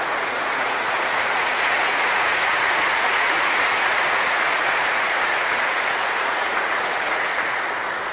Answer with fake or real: fake